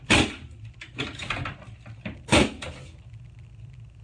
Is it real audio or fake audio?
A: real